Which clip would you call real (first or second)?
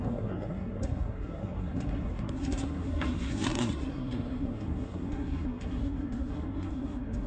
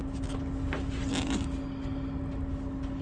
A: second